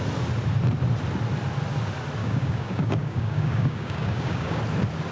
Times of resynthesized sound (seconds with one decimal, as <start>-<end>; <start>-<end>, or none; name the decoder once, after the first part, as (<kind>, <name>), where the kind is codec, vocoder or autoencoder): 2.2-4.6 (codec, DAC)